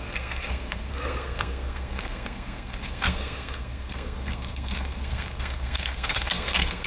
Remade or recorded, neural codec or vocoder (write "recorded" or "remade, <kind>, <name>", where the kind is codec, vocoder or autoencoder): remade, codec, SNAC